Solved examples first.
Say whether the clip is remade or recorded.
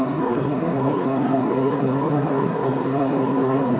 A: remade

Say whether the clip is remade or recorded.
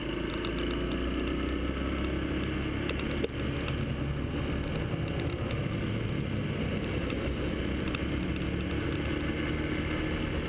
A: recorded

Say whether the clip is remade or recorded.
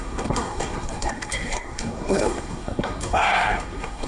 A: remade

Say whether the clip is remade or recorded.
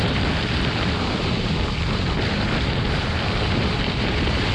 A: recorded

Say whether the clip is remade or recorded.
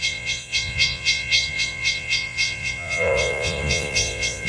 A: remade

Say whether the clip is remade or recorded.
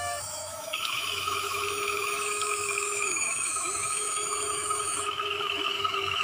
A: remade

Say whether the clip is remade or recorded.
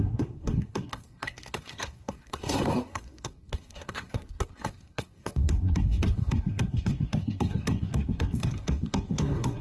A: remade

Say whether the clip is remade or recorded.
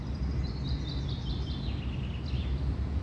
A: recorded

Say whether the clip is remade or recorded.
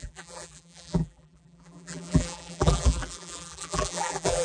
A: remade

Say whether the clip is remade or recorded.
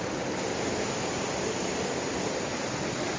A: recorded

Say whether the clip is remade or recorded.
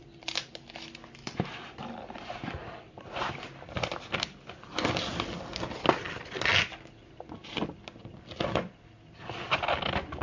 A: recorded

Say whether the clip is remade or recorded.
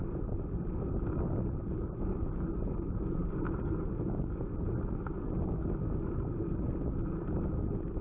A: recorded